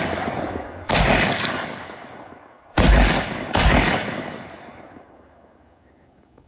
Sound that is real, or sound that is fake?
fake